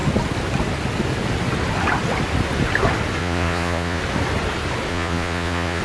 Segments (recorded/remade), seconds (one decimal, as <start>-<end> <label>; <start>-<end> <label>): 0.0-3.2 recorded; 3.2-4.0 remade; 4.0-4.9 recorded; 4.9-5.8 remade